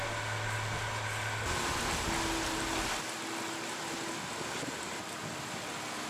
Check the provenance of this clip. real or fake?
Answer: real